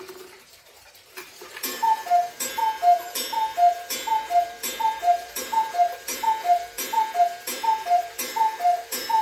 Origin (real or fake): fake